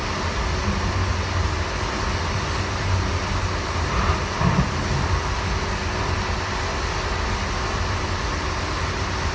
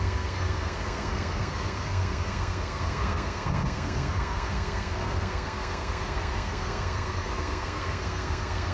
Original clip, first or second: first